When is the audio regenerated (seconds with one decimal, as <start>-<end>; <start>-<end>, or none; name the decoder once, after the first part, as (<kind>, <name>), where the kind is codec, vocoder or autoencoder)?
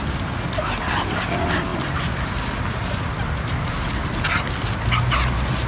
none